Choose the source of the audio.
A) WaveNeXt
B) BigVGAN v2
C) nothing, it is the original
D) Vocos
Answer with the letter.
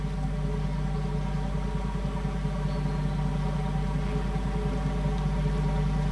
C